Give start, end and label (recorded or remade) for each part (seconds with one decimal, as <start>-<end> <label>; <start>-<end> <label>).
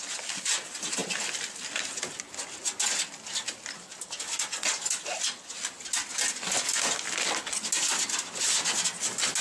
0.0-9.4 recorded